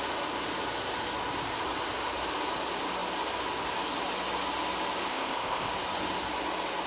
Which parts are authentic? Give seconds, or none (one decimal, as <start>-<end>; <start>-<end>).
0.0-5.1; 5.7-6.9